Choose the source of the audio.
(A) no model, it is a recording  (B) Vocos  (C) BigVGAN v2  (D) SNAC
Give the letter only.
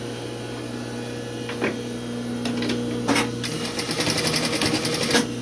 A